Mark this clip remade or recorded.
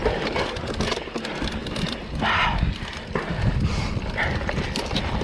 recorded